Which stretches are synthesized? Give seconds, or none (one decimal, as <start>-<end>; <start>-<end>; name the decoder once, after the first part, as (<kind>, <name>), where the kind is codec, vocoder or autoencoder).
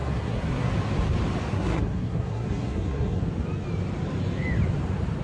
0.0-0.7 (codec, SNAC); 1.5-3.2